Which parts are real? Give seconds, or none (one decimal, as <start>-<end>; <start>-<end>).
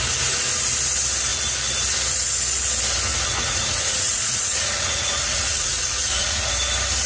0.0-3.1; 6.5-7.1